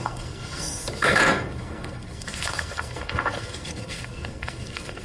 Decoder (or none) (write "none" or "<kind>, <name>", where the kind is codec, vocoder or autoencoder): codec, SNAC